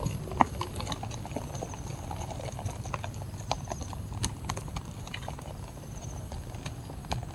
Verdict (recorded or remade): recorded